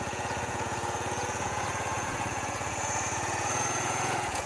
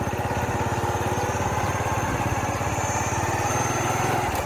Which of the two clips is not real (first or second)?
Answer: first